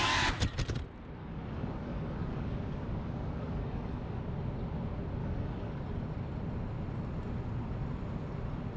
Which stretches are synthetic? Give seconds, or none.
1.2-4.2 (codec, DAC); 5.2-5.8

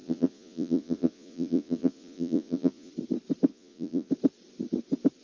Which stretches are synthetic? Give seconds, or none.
0.0-2.9 (vocoder, Vocos); 3.5-4.1

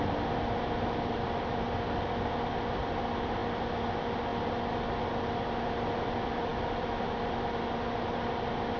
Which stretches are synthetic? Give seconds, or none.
none

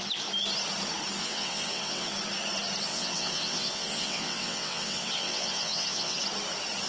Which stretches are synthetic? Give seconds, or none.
1.2-2.1 (vocoder, WaveNeXt); 2.9-6.2

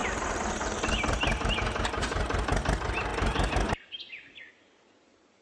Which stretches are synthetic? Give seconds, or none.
0.0-0.9 (vocoder, BigVGAN v2)

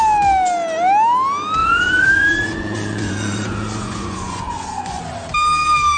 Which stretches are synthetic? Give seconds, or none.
1.6-5.0 (vocoder, Vocos)

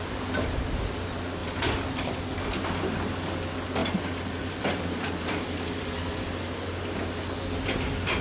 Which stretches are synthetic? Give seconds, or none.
1.4-2.2 (vocoder, BigVGAN v2); 3.8-5.8